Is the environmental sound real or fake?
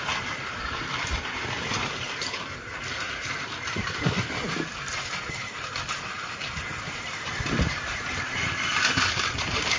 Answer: fake